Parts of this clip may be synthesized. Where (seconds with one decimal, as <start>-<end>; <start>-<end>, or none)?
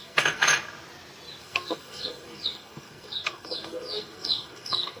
0.0-0.5; 1.4-5.0